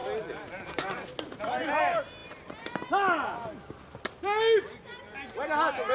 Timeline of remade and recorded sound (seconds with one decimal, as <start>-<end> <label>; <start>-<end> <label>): 0.0-5.9 recorded

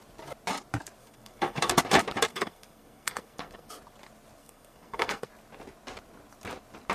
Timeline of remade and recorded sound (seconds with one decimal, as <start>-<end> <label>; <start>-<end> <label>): 0.0-1.0 recorded; 1.0-1.7 remade; 1.7-2.3 recorded; 2.3-3.7 remade; 3.7-4.4 recorded; 4.4-5.3 remade; 5.3-6.9 recorded

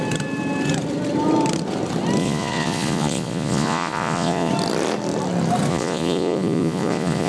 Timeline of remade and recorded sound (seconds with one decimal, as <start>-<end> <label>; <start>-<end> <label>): 0.0-2.2 recorded; 2.2-4.5 remade; 4.5-5.7 recorded; 5.7-7.3 remade